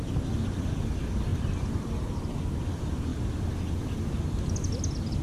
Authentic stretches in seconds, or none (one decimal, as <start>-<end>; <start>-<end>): 0.0-5.2